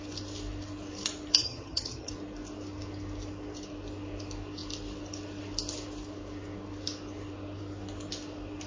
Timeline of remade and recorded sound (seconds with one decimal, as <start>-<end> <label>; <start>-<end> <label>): 0.0-1.4 recorded; 1.4-2.1 remade; 2.1-8.7 recorded